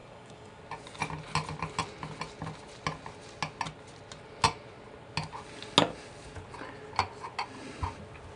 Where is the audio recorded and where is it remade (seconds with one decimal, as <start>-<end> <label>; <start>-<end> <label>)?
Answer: 0.0-0.6 remade; 0.6-8.4 recorded